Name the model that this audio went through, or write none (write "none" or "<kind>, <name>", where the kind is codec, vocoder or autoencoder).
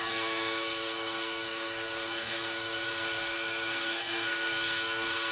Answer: codec, SNAC